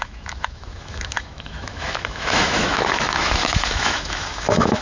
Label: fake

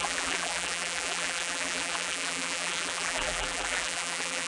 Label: fake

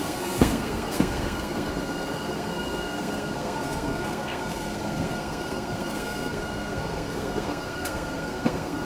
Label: fake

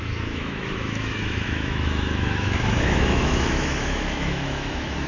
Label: fake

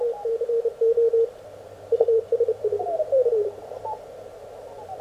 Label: fake